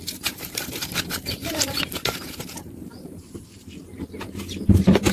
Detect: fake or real fake